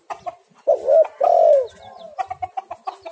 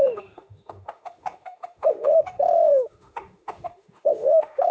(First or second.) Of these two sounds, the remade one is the second